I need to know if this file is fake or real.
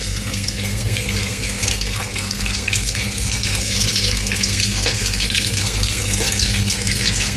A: fake